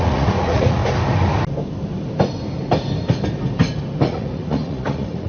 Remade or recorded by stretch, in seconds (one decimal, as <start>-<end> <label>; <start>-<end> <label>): 0.0-0.8 remade; 0.8-4.0 recorded; 4.0-5.3 remade